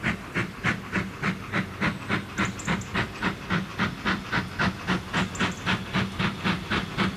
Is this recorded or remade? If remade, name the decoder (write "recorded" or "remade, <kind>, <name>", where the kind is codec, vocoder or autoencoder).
recorded